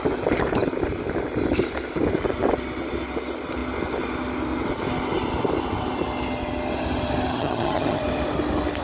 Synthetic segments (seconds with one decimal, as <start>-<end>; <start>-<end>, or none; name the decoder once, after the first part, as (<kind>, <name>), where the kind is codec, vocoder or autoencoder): 7.3-8.0 (vocoder, HiFi-GAN)